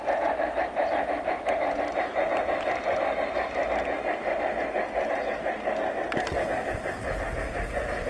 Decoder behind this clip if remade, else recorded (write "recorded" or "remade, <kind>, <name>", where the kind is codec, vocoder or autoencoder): recorded